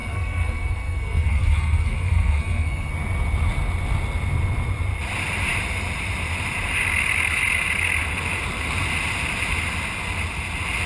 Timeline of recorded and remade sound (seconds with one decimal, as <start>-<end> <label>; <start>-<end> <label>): 0.0-2.9 remade; 2.9-10.9 recorded